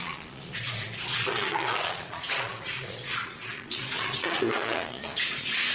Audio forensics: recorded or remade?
remade